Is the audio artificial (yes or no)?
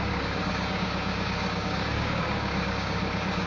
yes